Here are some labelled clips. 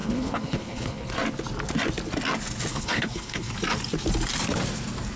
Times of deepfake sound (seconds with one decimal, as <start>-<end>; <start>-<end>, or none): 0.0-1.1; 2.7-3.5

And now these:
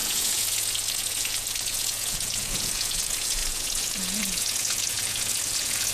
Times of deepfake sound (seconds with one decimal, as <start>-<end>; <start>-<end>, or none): 0.0-5.9

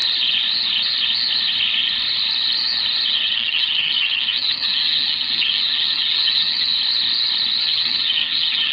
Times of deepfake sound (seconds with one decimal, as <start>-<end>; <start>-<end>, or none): 3.1-6.7; 7.6-8.7

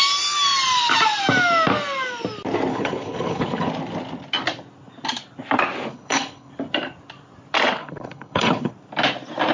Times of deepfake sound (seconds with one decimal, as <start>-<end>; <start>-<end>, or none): 2.7-3.7; 5.9-6.5; 7.8-8.7

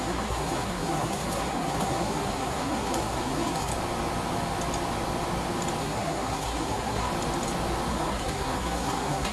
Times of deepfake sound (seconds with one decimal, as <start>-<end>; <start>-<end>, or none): 0.0-3.7; 5.8-7.1; 7.9-9.3

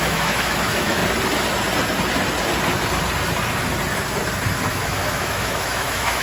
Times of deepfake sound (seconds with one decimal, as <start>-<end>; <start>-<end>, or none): 0.0-1.0; 4.7-6.2

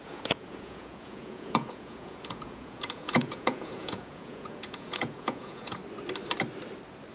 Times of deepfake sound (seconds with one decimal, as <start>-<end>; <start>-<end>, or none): 0.0-5.8

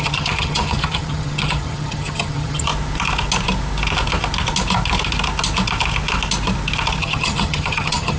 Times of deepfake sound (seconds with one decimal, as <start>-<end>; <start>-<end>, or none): 0.0-2.7; 7.0-8.2